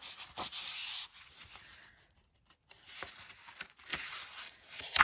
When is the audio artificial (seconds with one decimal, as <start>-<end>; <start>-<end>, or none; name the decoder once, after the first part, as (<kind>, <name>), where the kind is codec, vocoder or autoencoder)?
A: 3.9-5.0 (vocoder, BigVGAN v2)